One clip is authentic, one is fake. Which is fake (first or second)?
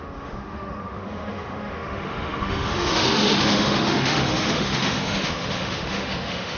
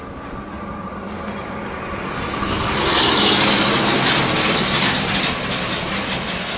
first